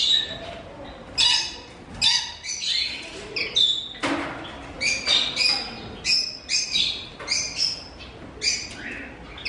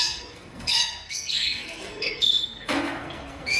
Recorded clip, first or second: first